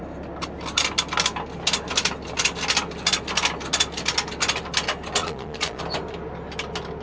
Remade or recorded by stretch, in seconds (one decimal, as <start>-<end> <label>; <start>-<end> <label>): 0.0-5.2 recorded; 5.2-5.8 remade; 5.8-7.0 recorded